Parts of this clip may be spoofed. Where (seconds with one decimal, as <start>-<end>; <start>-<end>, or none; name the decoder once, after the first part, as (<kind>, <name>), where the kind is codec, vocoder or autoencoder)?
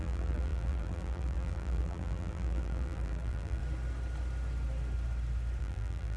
0.0-3.6 (vocoder, BigVGAN v2); 5.6-6.2